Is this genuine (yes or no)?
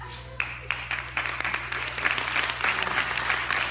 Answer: yes